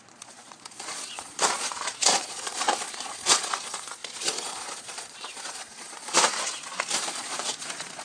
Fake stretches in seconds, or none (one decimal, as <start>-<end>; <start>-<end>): 0.0-8.0